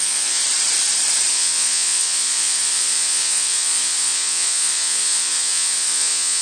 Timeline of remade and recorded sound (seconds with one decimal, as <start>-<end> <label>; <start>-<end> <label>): 0.0-0.4 remade; 0.4-1.3 recorded; 1.3-6.4 remade